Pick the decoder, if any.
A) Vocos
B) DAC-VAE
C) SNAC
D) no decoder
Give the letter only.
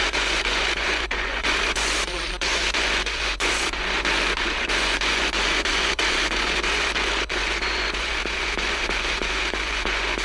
A